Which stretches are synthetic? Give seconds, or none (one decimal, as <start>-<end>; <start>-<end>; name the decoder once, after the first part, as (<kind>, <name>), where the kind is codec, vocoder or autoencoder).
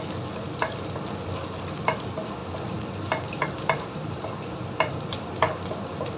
2.4-4.9 (vocoder, BigVGAN v2)